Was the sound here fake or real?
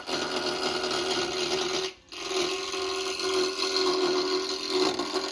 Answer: real